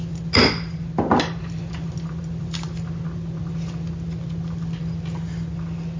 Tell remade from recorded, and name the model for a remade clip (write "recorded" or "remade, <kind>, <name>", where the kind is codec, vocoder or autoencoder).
recorded